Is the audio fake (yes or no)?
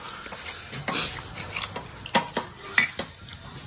no